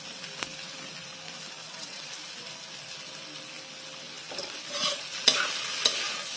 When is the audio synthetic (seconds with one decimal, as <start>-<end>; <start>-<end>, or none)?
1.6-2.1